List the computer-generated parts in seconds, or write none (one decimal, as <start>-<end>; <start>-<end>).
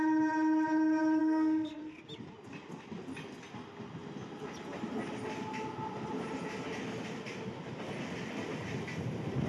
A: 1.2-2.0